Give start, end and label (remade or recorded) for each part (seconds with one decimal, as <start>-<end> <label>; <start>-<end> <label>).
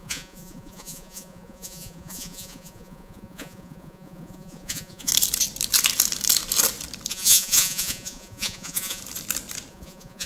0.0-5.1 remade; 5.1-7.1 recorded; 7.1-9.0 remade; 9.0-9.7 recorded; 9.7-10.3 remade